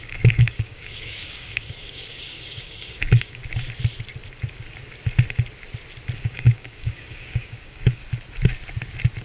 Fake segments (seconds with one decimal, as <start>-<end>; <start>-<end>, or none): 0.0-3.4; 6.2-8.0

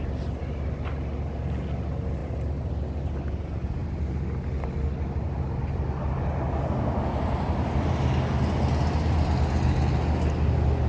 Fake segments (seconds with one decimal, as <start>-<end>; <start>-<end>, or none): none

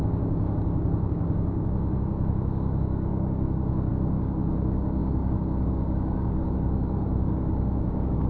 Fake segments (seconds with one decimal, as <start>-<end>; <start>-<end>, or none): 0.0-8.3

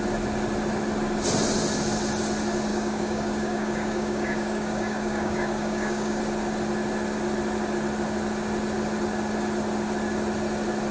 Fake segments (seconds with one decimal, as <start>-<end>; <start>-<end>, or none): 2.7-6.2

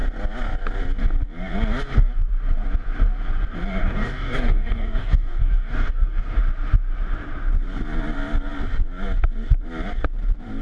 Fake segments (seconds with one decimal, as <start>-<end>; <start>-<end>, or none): 3.8-6.4

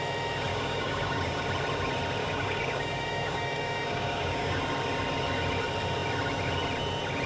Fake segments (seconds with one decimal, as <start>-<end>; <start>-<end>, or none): 0.5-1.4; 2.2-4.6